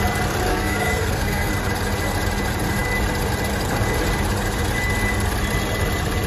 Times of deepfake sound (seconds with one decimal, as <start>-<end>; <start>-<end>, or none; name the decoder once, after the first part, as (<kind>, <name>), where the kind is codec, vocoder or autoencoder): 0.5-1.5 (codec, SNAC)